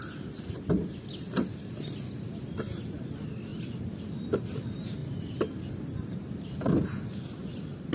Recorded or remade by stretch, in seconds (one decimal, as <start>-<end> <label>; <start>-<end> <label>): 0.0-7.9 recorded